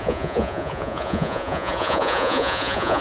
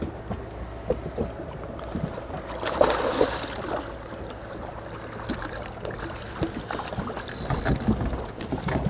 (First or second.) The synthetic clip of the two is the first